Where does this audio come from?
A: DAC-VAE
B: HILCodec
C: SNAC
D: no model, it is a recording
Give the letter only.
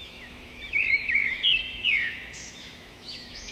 A